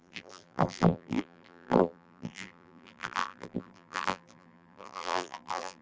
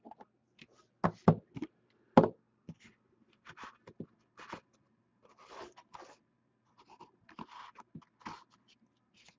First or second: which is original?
second